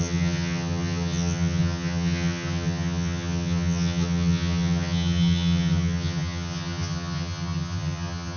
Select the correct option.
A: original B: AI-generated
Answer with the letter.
B